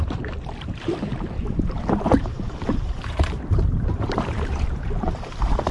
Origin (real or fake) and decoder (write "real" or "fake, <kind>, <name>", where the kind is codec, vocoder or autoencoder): fake, vocoder, BigVGAN v2